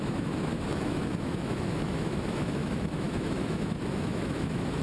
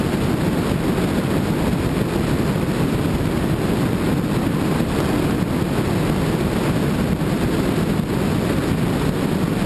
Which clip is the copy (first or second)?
first